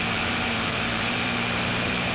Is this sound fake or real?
fake